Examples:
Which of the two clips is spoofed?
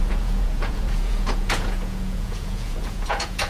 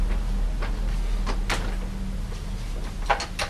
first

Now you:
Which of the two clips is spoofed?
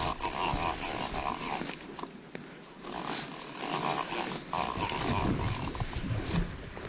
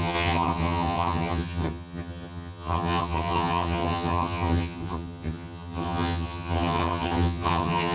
second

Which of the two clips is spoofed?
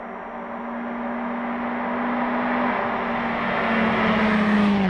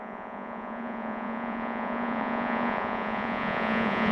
second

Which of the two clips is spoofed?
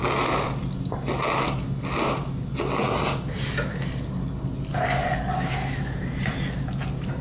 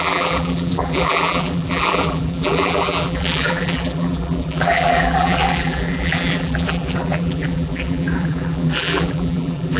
second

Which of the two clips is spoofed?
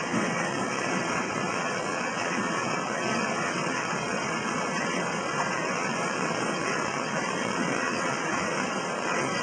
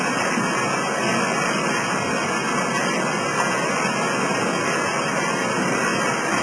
first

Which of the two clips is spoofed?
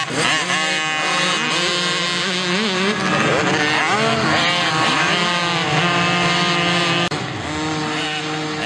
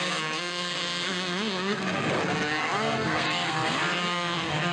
second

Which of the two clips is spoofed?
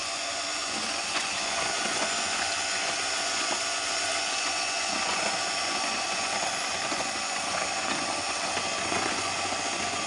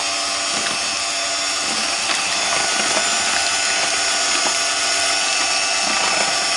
first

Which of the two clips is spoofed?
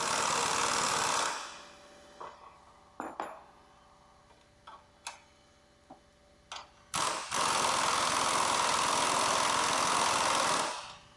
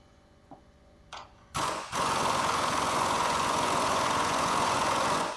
second